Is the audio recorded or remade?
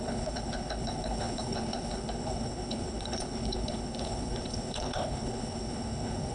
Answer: remade